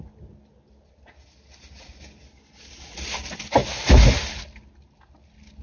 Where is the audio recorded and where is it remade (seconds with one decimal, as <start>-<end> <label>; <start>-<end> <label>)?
0.0-5.6 recorded